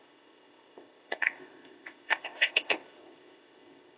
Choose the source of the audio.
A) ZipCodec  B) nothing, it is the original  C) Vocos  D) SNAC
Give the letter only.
A